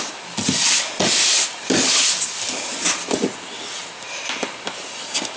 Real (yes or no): yes